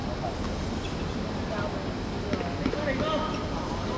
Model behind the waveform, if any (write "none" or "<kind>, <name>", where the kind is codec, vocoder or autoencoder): none